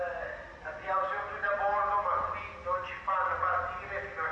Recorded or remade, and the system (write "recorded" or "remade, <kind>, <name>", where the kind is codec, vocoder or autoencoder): recorded